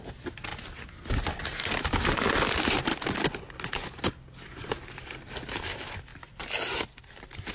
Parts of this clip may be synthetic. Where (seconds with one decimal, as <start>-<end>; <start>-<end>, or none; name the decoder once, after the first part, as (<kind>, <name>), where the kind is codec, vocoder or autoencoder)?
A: none